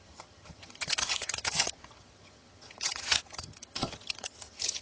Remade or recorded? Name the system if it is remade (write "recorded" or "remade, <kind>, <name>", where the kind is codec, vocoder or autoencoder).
remade, vocoder, HiFi-GAN